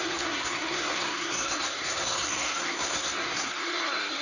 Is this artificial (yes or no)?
yes